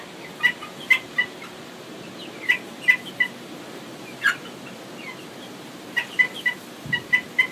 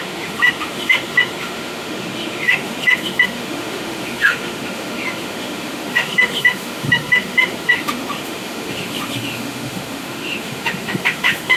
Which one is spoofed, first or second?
second